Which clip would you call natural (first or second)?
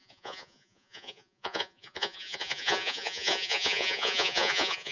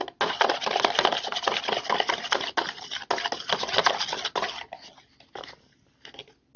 second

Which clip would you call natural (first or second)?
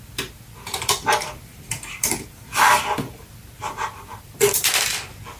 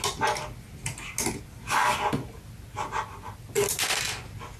second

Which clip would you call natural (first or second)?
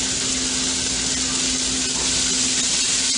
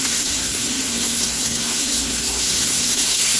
first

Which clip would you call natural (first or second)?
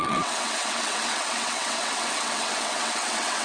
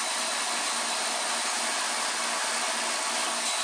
second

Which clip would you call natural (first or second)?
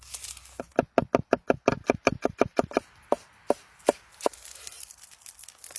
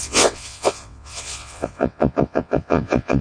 first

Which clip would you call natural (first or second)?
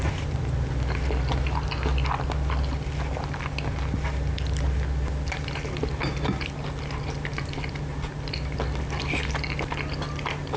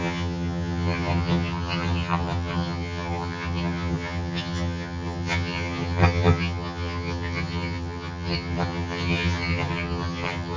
first